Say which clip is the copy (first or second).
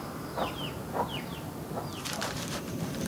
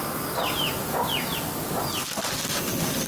first